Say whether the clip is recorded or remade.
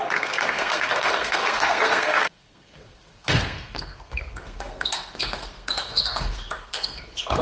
remade